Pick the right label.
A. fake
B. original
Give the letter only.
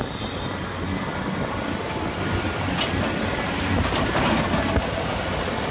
B